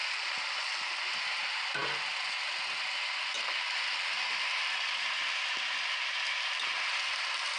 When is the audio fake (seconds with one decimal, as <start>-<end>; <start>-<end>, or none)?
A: 0.0-0.6